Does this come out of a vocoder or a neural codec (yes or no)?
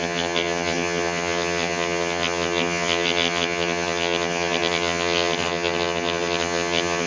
yes